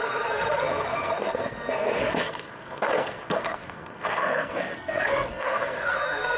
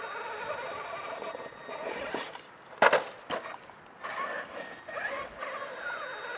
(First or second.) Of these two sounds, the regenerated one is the first